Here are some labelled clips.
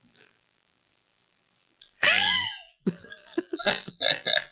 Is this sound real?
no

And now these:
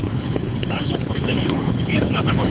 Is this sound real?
no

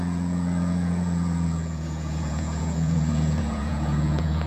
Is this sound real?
no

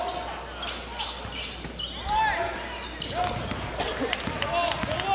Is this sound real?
yes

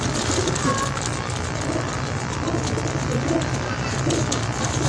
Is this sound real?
yes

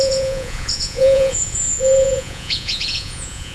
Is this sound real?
no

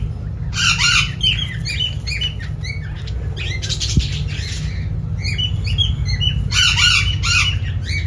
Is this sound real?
yes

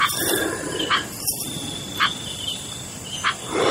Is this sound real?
yes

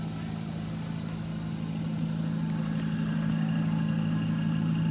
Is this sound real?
yes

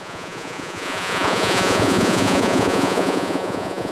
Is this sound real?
no